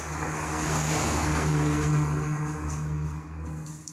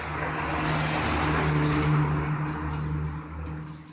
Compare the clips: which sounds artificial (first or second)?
first